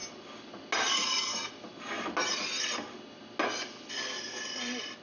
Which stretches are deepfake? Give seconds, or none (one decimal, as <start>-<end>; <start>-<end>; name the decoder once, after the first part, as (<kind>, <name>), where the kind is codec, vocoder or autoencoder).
none